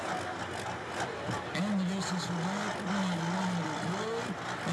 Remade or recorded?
recorded